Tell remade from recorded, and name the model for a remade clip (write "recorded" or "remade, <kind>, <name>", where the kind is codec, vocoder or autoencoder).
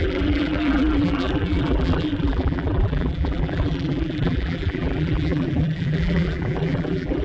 remade, vocoder, BigVGAN v2